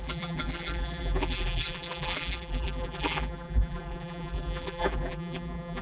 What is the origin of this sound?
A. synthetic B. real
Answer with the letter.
A